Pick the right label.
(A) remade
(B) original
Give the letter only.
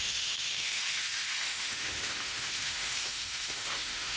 A